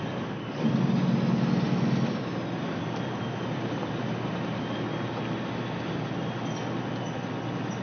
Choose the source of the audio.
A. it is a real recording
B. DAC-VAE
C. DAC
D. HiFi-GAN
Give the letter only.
A